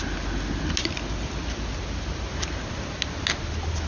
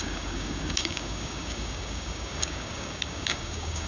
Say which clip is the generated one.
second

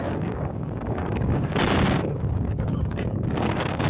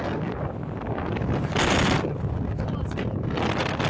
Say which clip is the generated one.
first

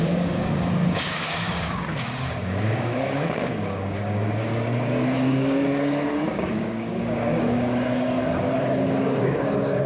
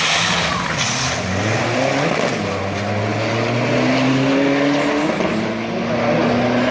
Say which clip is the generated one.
first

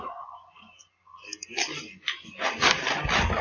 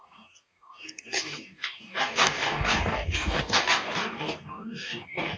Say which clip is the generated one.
second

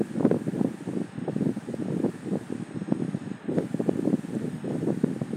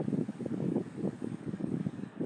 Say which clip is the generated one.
second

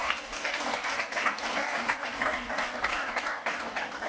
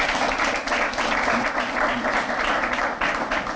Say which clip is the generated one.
first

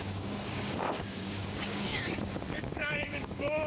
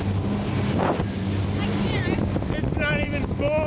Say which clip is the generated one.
first